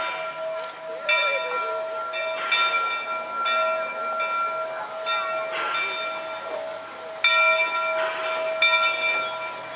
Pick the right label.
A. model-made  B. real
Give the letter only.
B